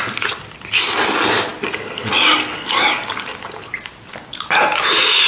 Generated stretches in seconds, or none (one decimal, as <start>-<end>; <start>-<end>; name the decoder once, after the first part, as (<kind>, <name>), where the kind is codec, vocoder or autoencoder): none